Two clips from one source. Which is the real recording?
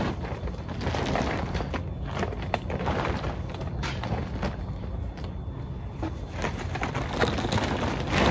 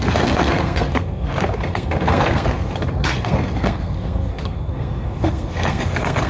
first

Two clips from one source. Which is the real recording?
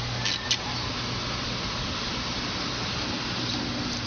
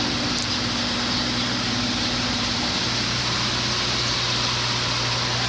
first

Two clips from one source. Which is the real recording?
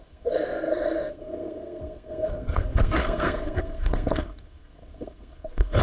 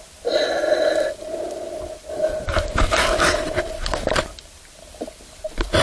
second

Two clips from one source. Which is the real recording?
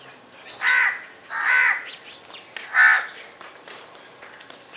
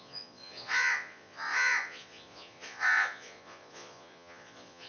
first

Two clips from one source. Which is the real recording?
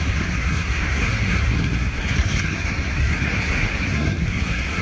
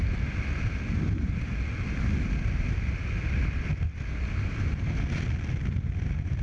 second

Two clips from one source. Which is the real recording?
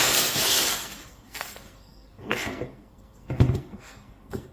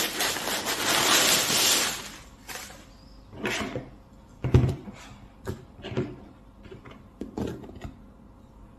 second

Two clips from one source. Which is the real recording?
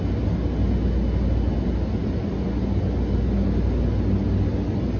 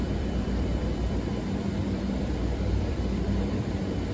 first